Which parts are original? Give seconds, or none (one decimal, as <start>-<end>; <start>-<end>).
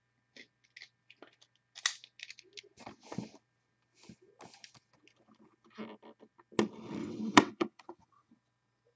0.0-7.0; 8.3-9.0